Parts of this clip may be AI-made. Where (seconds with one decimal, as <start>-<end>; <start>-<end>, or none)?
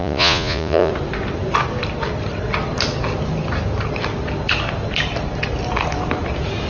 0.0-0.9